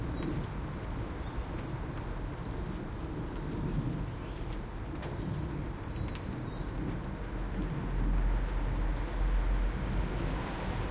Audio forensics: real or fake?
real